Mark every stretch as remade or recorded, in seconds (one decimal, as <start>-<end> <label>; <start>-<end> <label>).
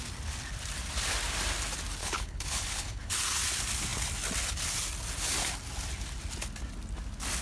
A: 0.0-2.0 recorded; 2.0-3.1 remade; 3.1-7.4 recorded